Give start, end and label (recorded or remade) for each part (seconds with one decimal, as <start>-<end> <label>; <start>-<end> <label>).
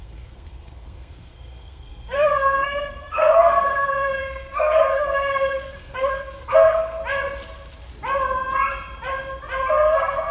0.0-7.0 remade; 7.0-9.7 recorded; 9.7-10.3 remade